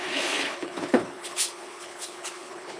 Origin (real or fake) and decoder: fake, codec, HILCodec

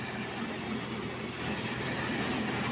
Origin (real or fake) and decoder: real